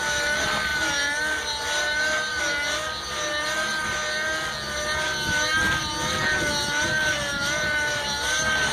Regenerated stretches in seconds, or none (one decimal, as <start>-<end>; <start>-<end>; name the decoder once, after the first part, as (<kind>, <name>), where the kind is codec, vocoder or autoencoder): none